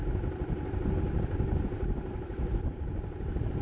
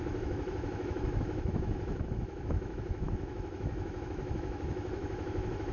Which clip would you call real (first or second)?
first